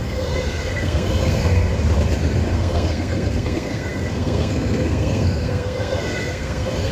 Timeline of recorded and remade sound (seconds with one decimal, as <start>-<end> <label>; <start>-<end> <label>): 0.0-1.7 remade; 1.7-2.5 recorded; 2.5-6.9 remade